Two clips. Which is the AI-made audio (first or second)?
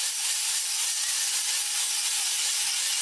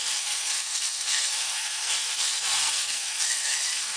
second